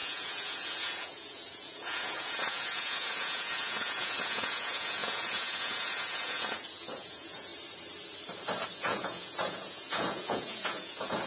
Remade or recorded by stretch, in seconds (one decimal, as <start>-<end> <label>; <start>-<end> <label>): 0.0-7.5 remade; 7.5-8.8 recorded; 8.8-11.3 remade